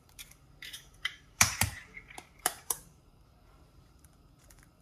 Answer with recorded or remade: remade